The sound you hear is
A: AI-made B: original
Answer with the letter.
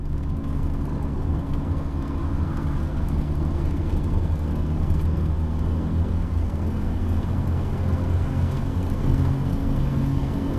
A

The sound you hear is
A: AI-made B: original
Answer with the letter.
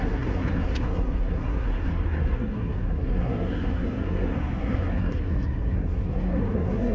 A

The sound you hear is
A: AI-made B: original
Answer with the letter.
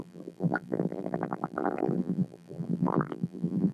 A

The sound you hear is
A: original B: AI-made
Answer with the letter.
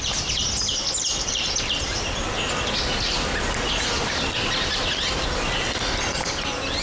A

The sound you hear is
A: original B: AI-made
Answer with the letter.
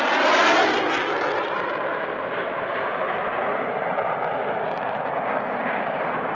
A